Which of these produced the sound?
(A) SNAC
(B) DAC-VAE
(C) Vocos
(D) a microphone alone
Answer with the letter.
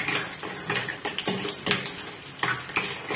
D